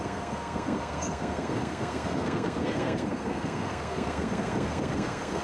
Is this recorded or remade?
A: remade